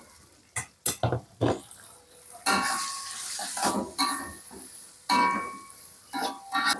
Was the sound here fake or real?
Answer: real